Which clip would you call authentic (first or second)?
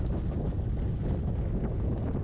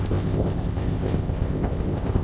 first